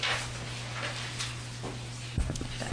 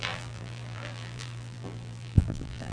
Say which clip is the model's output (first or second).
second